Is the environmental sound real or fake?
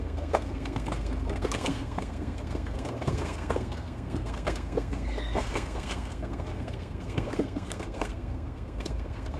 fake